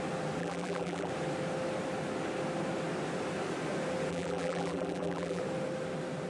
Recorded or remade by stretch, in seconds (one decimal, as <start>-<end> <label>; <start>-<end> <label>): 0.0-0.4 recorded; 0.4-1.1 remade; 1.1-4.1 recorded; 4.1-5.4 remade; 5.4-6.3 recorded